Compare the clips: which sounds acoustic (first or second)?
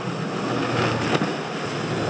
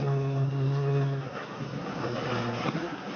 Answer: first